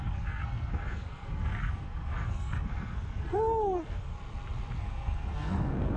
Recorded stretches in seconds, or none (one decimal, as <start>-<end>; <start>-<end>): 4.1-4.8